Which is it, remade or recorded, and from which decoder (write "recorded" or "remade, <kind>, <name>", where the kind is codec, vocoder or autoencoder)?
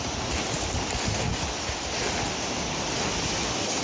recorded